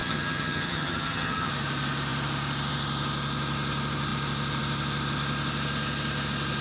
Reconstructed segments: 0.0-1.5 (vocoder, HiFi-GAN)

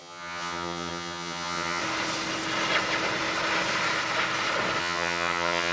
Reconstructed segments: 0.0-1.8 (vocoder, HiFi-GAN); 4.8-5.7

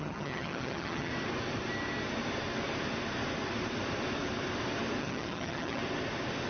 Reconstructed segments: 0.0-1.1 (vocoder, HiFi-GAN); 5.0-5.8

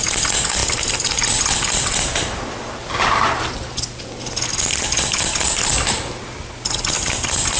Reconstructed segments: none

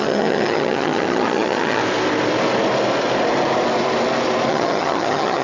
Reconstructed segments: 0.0-1.8 (vocoder, HiFi-GAN); 4.5-5.4

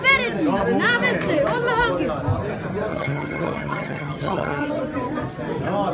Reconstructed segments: 2.9-4.7 (vocoder, HiFi-GAN)

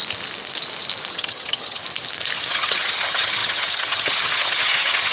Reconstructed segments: 1.1-1.8 (vocoder, HiFi-GAN); 2.5-5.1